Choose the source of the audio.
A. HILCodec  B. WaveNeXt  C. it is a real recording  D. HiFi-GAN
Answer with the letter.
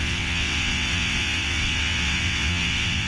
B